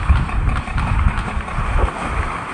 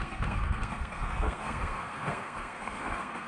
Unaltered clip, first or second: first